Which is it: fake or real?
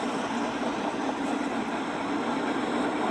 real